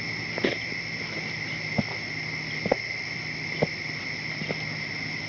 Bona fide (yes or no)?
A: yes